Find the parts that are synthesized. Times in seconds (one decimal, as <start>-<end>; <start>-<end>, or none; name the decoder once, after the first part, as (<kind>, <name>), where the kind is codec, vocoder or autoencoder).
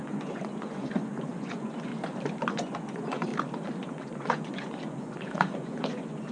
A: 0.0-1.9 (vocoder, Vocos); 2.5-3.3; 3.9-6.3